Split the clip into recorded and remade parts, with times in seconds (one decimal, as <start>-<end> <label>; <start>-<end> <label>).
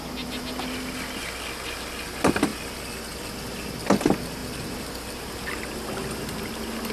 0.0-6.9 recorded